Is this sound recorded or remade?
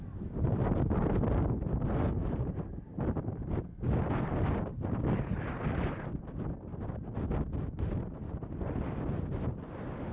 recorded